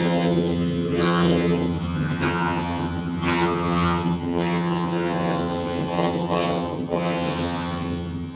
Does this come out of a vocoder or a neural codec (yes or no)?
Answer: yes